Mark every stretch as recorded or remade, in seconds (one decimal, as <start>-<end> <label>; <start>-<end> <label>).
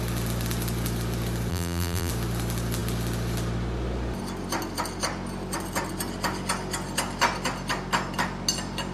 0.0-1.5 recorded; 1.5-2.1 remade; 2.1-8.9 recorded